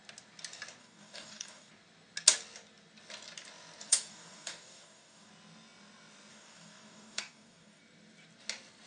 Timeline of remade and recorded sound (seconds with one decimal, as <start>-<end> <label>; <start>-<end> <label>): 0.0-0.8 recorded; 0.8-1.7 remade; 1.7-3.9 recorded; 3.9-5.3 remade; 5.3-6.3 recorded; 6.3-7.8 remade; 7.8-8.9 recorded